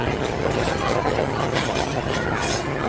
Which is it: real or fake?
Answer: fake